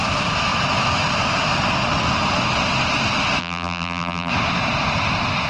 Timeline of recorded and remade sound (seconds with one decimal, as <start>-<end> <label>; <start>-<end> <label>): 0.0-3.4 recorded; 3.4-4.3 remade; 4.3-5.5 recorded